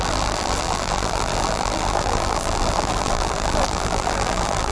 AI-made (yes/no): yes